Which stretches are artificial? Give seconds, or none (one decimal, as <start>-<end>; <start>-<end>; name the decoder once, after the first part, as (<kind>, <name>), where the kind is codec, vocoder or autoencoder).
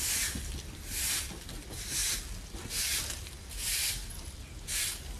none